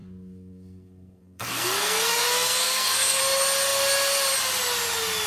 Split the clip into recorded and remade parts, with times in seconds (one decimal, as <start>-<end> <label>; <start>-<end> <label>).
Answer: 0.0-3.2 remade; 3.2-5.3 recorded